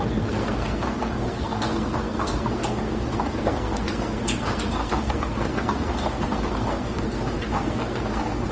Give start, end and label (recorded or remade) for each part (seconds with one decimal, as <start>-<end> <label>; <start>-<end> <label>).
0.0-8.5 remade